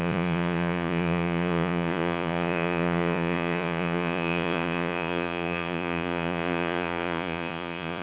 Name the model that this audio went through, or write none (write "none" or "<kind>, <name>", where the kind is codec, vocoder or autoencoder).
vocoder, Vocos